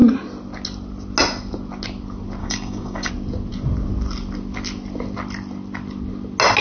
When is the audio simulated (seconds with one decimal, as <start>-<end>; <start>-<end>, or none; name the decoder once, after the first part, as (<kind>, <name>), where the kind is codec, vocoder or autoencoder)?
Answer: 2.4-3.1 (codec, DAC)